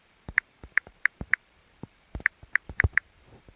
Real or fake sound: fake